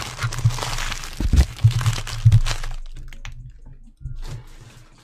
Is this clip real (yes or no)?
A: yes